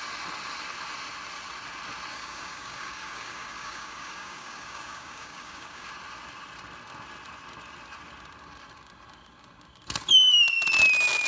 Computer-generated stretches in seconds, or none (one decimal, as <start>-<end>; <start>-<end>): 2.1-5.9